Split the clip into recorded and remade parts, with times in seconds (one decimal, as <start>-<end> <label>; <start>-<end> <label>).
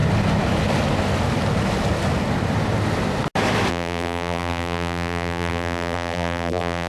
0.0-3.7 recorded; 3.7-6.9 remade